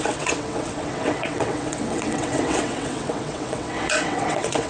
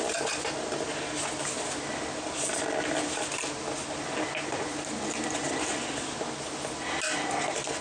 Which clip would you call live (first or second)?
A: second